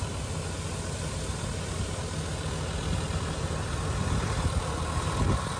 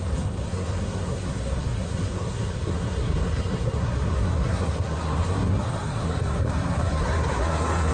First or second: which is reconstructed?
second